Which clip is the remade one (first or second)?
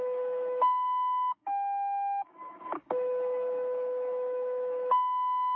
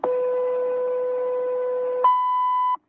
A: first